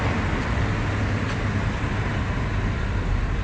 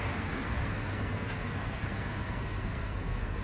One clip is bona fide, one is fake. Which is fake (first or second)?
second